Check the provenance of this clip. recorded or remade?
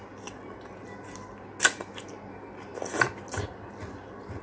recorded